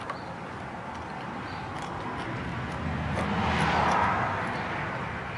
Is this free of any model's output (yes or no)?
yes